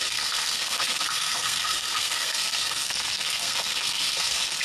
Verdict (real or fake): fake